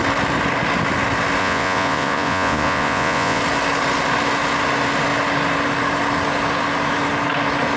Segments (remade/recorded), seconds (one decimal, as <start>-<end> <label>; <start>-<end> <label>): 0.0-1.4 recorded; 1.4-3.4 remade; 3.4-7.8 recorded